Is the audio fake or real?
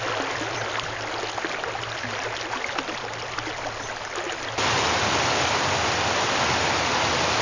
real